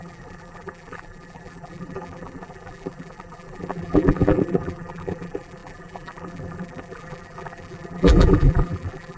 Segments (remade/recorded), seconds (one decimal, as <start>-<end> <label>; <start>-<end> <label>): 0.0-9.2 remade